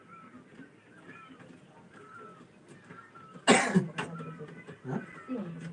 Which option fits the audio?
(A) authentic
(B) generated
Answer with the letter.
A